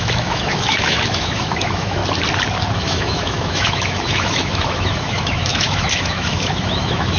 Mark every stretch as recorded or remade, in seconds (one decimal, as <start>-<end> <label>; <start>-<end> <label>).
0.0-2.0 remade; 2.0-2.7 recorded; 2.7-7.2 remade